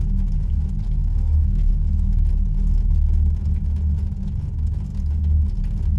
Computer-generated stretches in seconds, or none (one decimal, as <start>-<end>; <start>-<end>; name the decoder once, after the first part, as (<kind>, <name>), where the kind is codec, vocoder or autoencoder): 1.0-1.7 (codec, SNAC)